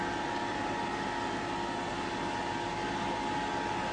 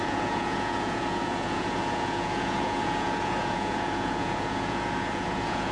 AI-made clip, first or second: second